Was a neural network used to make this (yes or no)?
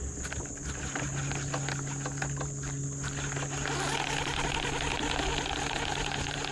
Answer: no